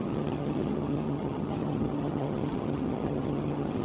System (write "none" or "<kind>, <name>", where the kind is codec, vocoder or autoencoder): vocoder, HiFi-GAN